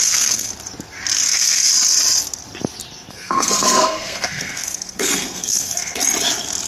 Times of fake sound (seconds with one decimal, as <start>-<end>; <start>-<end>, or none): 0.0-0.5; 1.2-1.7; 3.1-6.0